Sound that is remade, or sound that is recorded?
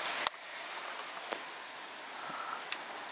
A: recorded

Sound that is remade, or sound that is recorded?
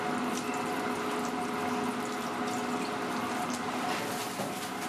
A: recorded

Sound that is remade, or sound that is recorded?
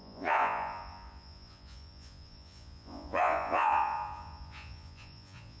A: remade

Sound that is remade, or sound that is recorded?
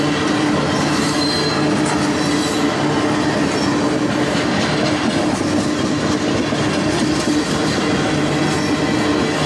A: recorded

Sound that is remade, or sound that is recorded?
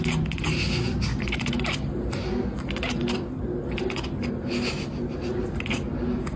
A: recorded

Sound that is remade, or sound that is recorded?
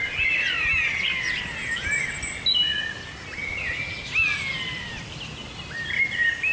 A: recorded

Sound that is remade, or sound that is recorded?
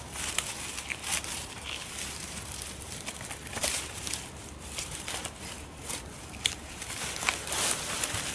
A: remade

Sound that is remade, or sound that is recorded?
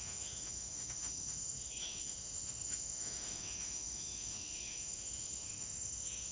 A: remade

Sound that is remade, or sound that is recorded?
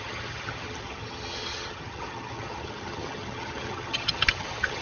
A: remade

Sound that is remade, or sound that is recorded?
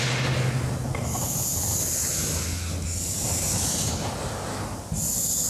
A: recorded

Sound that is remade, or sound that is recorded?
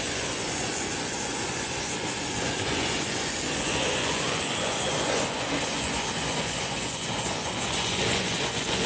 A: remade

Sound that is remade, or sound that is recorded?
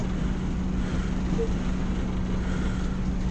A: recorded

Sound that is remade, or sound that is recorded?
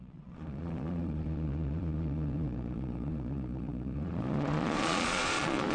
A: remade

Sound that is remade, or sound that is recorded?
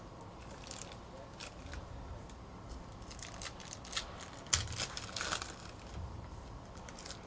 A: recorded